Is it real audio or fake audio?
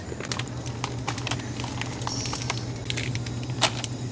real